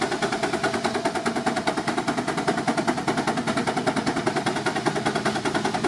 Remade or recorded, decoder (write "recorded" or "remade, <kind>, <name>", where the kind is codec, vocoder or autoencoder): recorded